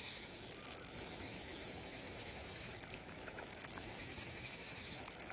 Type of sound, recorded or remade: remade